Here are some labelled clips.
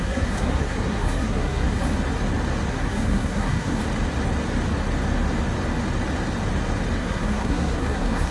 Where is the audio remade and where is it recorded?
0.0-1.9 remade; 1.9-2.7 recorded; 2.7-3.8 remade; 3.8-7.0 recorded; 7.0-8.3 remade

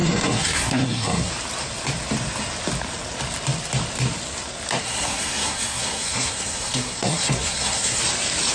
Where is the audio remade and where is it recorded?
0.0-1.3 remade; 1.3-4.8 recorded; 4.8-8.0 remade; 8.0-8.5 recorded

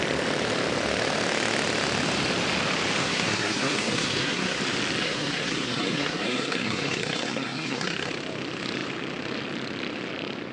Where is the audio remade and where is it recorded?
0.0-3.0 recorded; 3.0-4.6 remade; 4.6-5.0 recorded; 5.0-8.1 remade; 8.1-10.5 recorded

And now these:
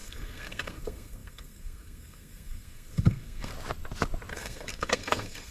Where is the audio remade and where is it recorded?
0.0-3.5 remade; 3.5-4.3 recorded; 4.3-5.5 remade

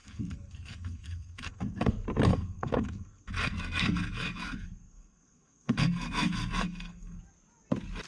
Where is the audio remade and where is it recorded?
0.0-1.9 remade; 1.9-2.3 recorded; 2.3-7.2 remade; 7.2-8.1 recorded

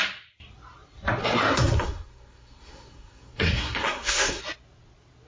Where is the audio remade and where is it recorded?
0.0-1.2 recorded; 1.2-4.4 remade; 4.4-5.3 recorded